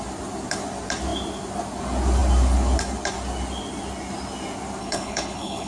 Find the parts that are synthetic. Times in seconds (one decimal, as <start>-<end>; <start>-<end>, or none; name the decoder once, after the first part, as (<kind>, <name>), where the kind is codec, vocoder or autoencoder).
4.8-5.7 (codec, HILCodec)